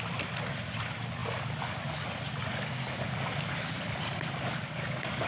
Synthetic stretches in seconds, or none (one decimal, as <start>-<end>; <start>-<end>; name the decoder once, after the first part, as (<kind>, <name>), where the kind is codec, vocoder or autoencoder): none